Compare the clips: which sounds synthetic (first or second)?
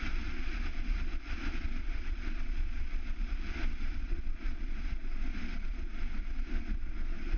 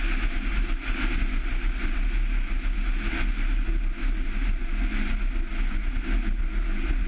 first